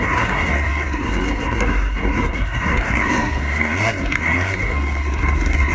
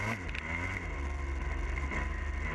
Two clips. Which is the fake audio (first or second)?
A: first